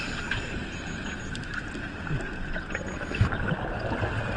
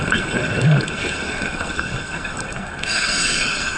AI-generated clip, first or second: second